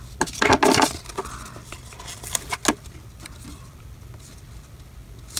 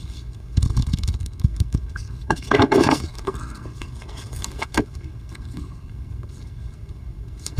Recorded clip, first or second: first